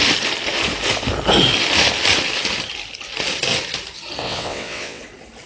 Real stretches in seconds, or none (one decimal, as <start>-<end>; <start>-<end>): 0.0-4.2; 5.0-5.5